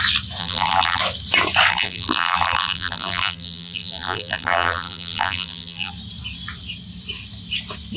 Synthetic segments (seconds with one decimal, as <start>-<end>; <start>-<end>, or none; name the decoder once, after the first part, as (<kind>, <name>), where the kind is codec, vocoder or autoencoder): 0.4-1.0 (vocoder, BigVGAN v2); 1.7-5.9